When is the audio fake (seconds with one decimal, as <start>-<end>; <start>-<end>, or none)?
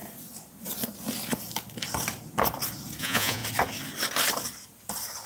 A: 3.0-3.4